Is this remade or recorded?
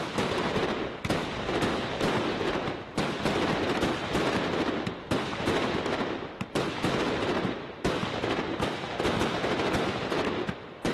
remade